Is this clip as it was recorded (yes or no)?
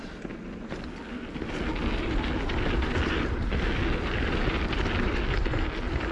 yes